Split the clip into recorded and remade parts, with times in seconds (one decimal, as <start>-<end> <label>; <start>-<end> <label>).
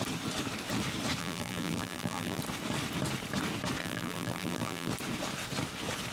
0.0-1.2 recorded; 1.2-2.4 remade; 2.4-3.8 recorded; 3.8-4.9 remade; 4.9-6.1 recorded